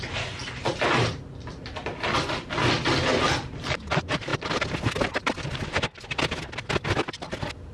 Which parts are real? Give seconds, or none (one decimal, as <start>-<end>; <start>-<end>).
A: 0.0-7.7